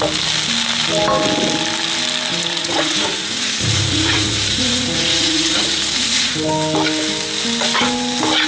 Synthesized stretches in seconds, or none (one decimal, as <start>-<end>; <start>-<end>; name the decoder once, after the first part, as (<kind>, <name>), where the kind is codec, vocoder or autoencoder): 2.3-6.3 (vocoder, Vocos)